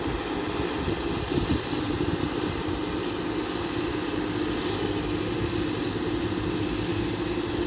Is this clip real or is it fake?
real